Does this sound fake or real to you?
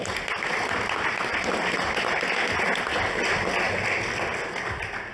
real